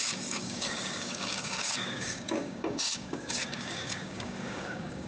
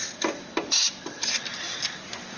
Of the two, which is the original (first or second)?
second